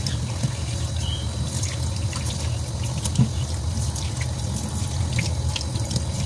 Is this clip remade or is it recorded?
recorded